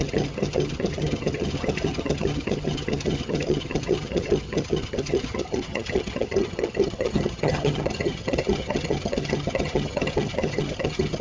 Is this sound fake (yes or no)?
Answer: yes